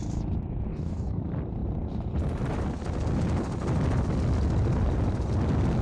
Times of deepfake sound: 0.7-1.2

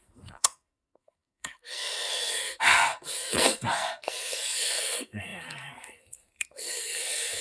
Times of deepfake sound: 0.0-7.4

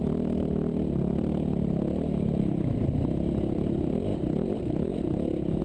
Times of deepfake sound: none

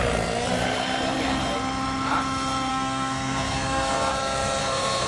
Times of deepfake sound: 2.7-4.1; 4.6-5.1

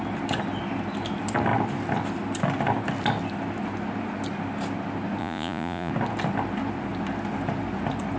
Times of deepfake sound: 5.2-5.9

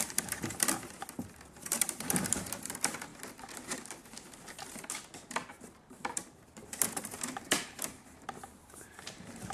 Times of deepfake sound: 0.0-7.9; 8.4-9.5